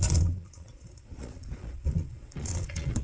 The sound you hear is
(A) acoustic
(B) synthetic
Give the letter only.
B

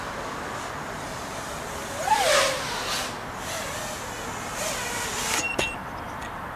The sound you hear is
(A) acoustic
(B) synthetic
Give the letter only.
A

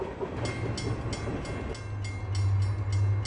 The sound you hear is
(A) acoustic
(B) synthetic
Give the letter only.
A